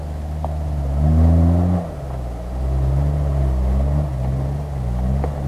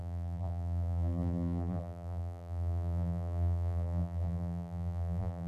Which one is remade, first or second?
second